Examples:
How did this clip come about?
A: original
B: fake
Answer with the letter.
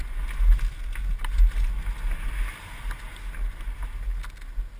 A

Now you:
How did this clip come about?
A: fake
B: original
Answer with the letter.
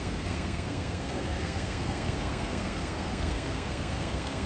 A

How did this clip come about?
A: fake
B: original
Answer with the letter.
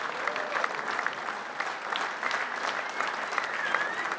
B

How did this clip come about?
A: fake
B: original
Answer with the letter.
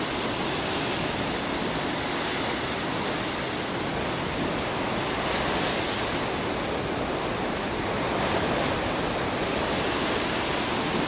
B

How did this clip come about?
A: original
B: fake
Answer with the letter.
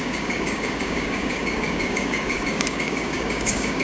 B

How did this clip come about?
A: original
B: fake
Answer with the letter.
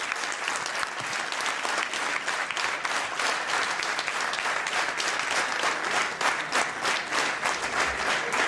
A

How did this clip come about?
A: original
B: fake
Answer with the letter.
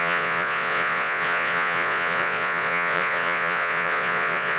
B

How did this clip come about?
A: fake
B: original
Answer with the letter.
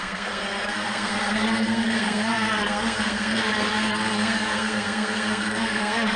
A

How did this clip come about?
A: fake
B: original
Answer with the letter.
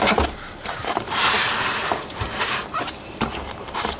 A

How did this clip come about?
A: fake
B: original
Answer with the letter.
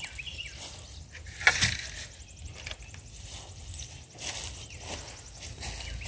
B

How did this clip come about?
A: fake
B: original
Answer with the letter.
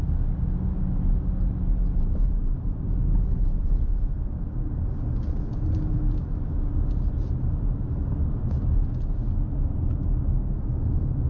B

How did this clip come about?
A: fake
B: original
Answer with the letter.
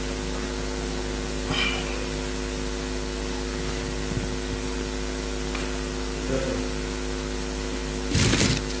B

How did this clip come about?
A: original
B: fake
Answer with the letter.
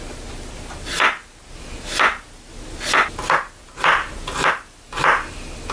A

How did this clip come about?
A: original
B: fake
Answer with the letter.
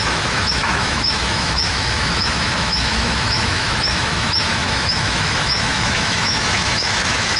B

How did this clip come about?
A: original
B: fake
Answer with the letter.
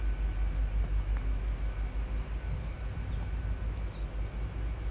A